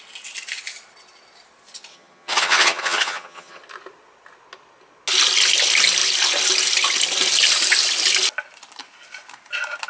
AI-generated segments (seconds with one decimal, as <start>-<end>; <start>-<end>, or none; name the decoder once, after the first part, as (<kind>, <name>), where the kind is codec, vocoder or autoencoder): 1.9-3.6 (vocoder, HiFi-GAN)